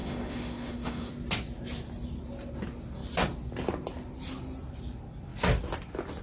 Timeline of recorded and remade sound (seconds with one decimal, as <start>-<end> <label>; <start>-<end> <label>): 0.0-1.1 remade; 1.1-6.2 recorded